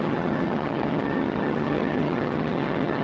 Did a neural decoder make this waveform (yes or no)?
yes